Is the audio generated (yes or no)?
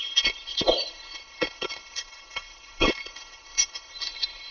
yes